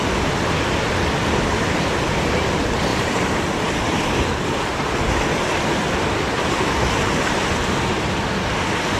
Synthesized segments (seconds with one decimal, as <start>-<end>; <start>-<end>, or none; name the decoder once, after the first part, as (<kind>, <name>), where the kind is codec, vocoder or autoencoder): 2.9-4.4 (vocoder, BigVGAN v2)